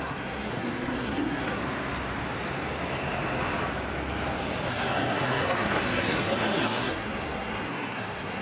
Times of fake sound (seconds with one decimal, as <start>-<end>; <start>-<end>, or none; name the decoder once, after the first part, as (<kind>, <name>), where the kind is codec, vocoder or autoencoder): 0.0-1.6 (codec, SNAC); 4.7-8.4